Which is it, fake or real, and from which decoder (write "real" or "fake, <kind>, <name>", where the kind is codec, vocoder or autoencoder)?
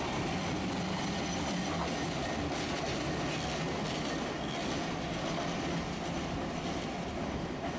real